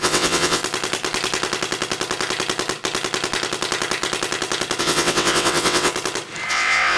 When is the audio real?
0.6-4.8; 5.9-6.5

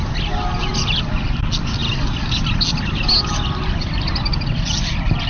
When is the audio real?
0.0-5.3